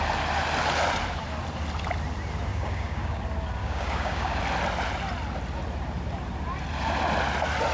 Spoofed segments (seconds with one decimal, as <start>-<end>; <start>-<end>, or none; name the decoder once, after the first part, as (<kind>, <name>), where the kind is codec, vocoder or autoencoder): 2.5-3.2 (codec, DAC); 3.6-4.4